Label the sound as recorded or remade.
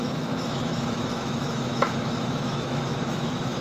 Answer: remade